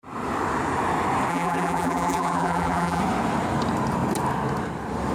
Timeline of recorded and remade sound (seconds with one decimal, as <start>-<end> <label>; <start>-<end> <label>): 0.0-1.3 recorded; 1.3-3.0 remade; 3.0-5.1 recorded